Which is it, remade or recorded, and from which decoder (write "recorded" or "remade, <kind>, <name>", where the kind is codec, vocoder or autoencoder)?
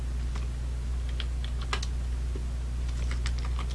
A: recorded